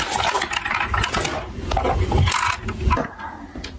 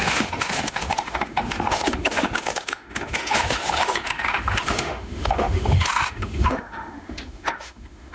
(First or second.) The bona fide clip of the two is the first